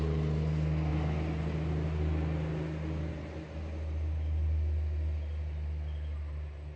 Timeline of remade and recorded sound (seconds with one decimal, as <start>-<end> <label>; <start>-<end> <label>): 0.0-6.8 recorded